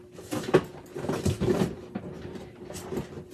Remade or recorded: recorded